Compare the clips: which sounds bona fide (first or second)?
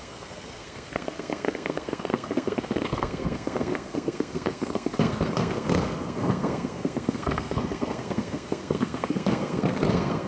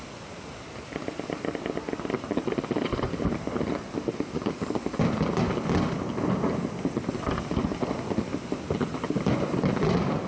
second